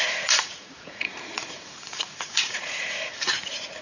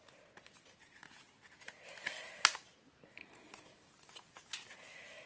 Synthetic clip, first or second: first